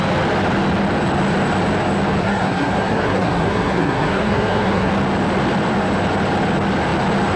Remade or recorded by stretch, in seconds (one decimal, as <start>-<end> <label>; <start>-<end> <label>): 0.0-2.2 recorded; 2.2-4.9 remade; 4.9-7.4 recorded